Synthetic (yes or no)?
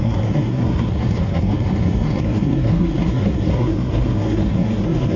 yes